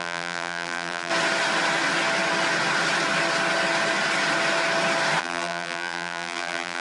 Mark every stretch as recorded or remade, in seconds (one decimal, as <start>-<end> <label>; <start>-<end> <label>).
0.0-1.1 remade; 1.1-5.2 recorded; 5.2-6.8 remade